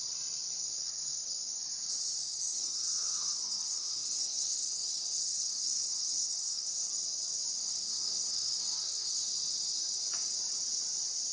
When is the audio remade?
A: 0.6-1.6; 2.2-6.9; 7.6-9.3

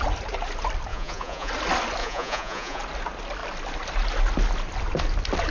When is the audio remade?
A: 0.9-1.5; 2.0-2.8

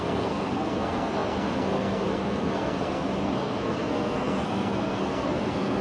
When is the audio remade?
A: 0.0-5.8

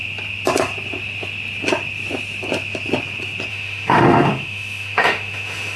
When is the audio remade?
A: 3.5-5.8

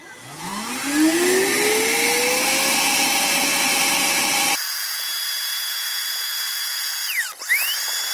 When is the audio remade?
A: 0.0-0.5; 3.0-3.7; 4.6-7.0